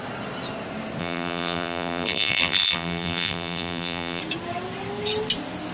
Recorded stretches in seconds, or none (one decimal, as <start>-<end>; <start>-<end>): 0.0-1.0; 4.2-5.7